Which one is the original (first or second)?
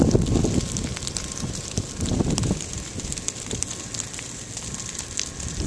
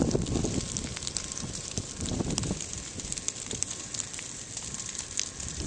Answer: first